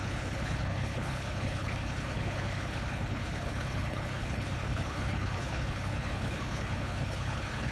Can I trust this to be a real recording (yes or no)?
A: no